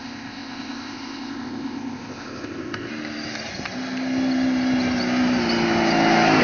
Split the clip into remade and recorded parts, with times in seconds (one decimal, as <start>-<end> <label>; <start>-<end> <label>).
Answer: 0.0-2.9 remade; 2.9-6.4 recorded